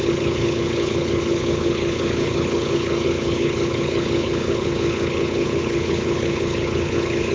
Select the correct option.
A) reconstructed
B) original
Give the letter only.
A